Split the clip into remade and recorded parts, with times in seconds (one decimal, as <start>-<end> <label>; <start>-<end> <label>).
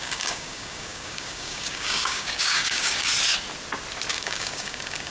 0.0-3.1 remade; 3.1-4.1 recorded; 4.1-5.1 remade